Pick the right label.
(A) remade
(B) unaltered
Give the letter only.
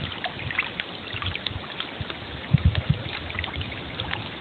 B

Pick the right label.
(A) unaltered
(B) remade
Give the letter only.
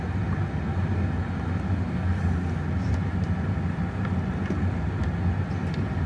A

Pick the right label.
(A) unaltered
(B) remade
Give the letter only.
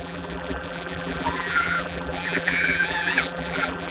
B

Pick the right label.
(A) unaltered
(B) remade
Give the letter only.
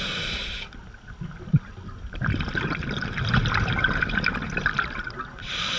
A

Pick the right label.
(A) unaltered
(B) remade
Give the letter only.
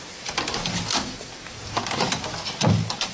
A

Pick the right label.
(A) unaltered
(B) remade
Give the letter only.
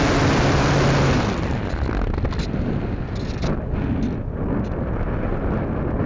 A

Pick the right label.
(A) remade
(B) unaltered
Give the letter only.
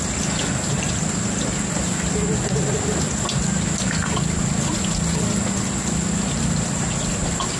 B